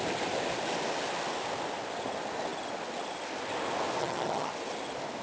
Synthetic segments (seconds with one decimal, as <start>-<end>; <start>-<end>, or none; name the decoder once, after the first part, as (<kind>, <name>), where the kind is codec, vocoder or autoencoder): 4.0-4.5 (vocoder, HiFi-GAN)